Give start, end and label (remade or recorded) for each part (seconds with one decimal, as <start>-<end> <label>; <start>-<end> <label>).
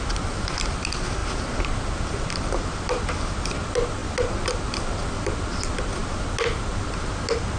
0.0-7.6 recorded